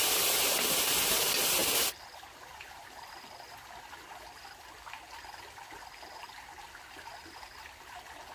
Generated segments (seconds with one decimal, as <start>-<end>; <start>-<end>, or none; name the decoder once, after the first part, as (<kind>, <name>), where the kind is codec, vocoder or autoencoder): 0.0-0.7 (vocoder, BigVGAN v2); 1.6-6.4